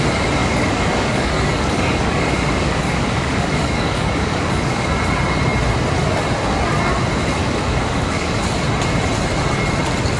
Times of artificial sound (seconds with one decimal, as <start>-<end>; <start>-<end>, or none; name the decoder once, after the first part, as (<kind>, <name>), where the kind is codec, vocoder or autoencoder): 0.4-4.9 (codec, DAC); 7.4-8.4